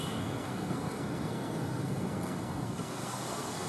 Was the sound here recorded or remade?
remade